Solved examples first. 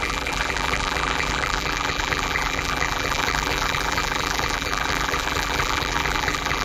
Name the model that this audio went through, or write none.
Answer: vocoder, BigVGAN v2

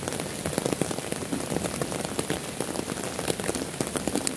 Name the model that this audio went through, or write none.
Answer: none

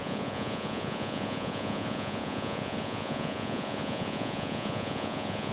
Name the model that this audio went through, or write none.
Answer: vocoder, Vocos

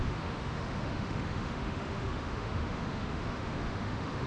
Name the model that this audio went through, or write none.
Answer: autoencoder, DAC-VAE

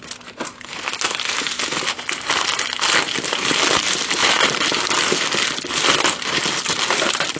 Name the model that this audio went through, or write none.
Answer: none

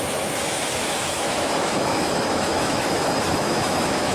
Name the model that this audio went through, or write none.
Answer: autoencoder, DAC-VAE